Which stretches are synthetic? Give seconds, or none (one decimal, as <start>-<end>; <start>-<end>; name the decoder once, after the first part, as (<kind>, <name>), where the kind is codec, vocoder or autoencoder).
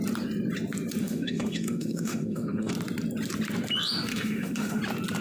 1.0-2.7 (autoencoder, DAC-VAE); 4.1-4.8